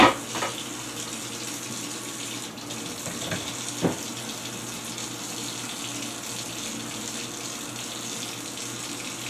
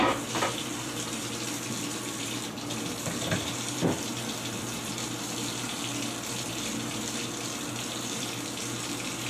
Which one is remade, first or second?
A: second